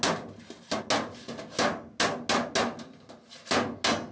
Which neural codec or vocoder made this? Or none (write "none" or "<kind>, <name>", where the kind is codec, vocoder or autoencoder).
none